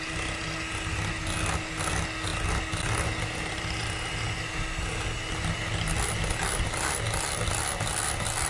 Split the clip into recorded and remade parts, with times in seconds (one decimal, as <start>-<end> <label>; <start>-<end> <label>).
0.0-8.5 recorded